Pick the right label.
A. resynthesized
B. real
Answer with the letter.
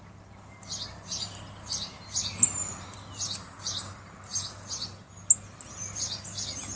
B